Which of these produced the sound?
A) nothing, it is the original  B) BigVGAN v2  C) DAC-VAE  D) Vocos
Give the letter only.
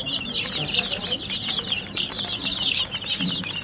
B